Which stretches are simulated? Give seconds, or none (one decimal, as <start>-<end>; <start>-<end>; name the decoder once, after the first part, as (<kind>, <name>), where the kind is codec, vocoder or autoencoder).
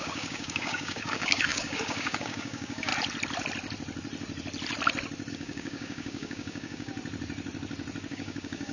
0.0-2.9 (codec, DAC); 5.3-6.9; 8.1-8.7